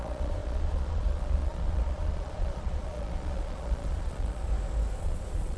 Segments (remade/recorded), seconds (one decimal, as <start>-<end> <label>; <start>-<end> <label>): 0.0-4.5 remade; 4.5-5.0 recorded; 5.0-5.6 remade